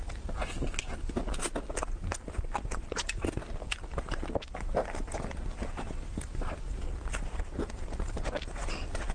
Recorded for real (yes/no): yes